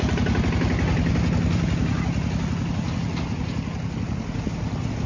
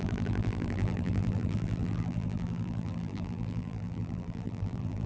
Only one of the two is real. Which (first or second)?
first